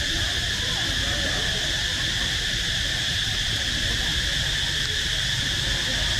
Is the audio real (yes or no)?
yes